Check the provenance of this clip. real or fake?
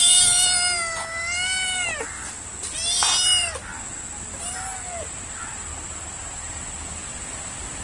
real